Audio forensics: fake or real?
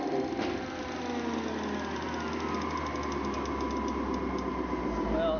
real